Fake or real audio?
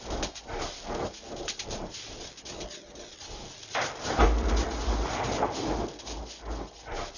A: real